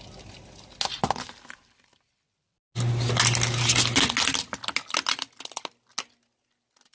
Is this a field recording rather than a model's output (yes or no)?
yes